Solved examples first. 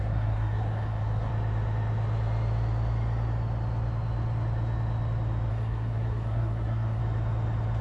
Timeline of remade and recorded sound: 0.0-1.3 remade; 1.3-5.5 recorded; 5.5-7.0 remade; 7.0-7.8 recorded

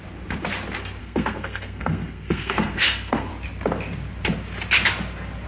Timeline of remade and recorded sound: 0.0-1.0 recorded; 1.0-3.3 remade; 3.3-5.5 recorded